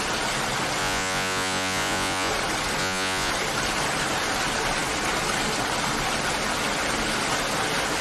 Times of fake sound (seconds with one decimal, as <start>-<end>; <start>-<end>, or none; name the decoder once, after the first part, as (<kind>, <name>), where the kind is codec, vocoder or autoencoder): 0.8-2.3 (vocoder, Vocos); 2.8-3.3